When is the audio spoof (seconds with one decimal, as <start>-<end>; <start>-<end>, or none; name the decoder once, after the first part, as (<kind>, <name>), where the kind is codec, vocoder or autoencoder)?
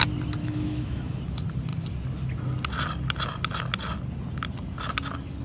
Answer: 0.4-1.2 (autoencoder, DAC-VAE)